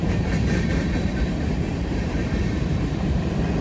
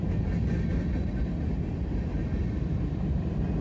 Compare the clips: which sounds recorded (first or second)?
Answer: second